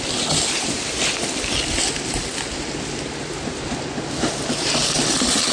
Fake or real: real